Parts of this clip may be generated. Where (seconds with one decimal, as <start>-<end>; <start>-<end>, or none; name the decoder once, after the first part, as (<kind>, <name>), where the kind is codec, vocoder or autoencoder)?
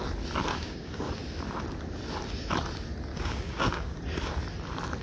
0.5-1.1 (codec, DAC); 3.1-4.0